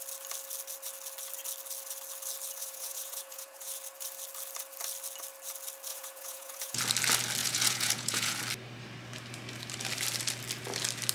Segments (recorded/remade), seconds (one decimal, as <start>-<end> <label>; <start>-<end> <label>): 0.0-2.6 recorded; 2.6-3.7 remade; 3.7-5.9 recorded; 5.9-6.8 remade; 6.8-7.4 recorded; 7.4-8.4 remade; 8.4-11.1 recorded